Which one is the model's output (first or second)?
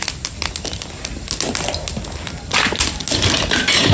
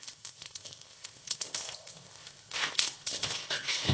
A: second